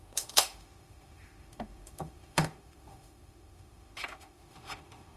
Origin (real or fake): fake